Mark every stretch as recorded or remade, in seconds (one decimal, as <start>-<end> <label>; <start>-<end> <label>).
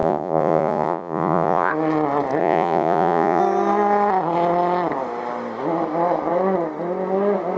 0.0-1.7 remade; 1.7-2.4 recorded; 2.4-3.4 remade; 3.4-7.6 recorded